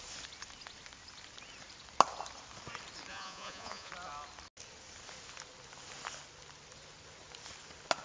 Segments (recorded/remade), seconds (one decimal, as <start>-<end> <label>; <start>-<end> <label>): 0.0-3.1 recorded; 3.1-3.9 remade; 3.9-8.0 recorded